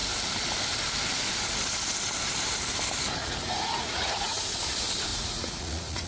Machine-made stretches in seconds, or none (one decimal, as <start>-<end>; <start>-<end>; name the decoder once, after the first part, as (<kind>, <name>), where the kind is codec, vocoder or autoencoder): 3.2-4.4 (vocoder, Vocos); 5.1-6.1